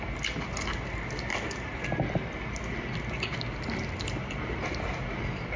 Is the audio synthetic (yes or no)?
no